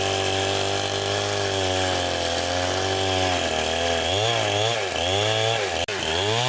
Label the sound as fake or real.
real